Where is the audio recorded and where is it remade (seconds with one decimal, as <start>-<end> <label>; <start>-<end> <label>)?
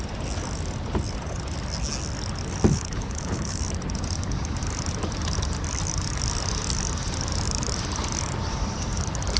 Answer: 0.0-2.7 recorded; 2.7-3.6 remade; 3.6-9.4 recorded